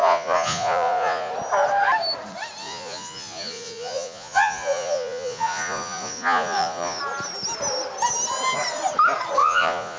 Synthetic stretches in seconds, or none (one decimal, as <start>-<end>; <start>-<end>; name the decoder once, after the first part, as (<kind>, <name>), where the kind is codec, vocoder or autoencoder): 0.0-1.3 (vocoder, Vocos); 2.6-7.0; 9.4-10.0